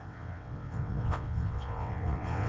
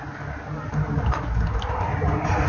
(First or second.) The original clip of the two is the second